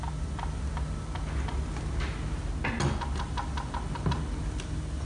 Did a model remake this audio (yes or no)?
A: no